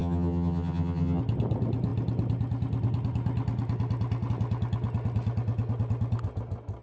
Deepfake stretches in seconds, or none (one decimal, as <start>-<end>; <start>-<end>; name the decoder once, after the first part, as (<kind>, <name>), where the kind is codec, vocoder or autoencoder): 0.0-1.2 (vocoder, HiFi-GAN)

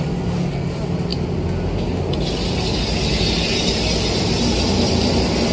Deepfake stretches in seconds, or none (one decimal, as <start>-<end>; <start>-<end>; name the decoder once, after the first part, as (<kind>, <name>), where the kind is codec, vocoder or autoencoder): none

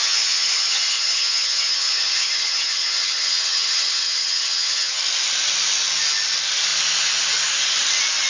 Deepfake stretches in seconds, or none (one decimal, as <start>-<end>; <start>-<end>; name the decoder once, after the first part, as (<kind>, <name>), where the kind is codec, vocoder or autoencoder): 0.0-5.0 (vocoder, HiFi-GAN)